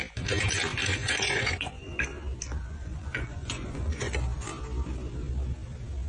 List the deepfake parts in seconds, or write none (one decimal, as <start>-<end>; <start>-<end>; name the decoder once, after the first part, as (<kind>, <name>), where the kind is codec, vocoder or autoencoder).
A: 0.9-2.0 (vocoder, Vocos); 2.6-4.1